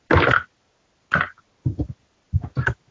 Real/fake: real